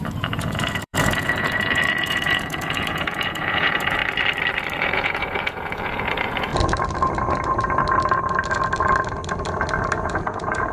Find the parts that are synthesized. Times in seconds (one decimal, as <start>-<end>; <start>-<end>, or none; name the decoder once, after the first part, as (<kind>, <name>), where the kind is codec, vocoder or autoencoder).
0.0-4.0 (vocoder, Vocos); 4.8-6.5; 10.0-10.7

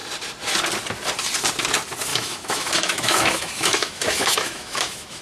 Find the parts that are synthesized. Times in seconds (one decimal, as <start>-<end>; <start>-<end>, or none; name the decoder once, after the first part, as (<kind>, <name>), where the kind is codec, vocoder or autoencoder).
2.1-5.2 (autoencoder, DAC-VAE)